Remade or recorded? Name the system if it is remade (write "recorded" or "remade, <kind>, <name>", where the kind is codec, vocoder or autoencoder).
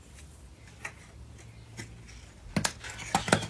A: recorded